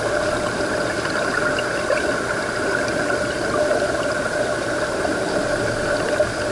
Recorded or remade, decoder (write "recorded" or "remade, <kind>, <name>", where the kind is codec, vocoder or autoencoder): recorded